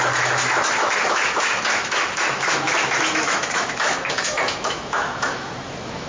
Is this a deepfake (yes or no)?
yes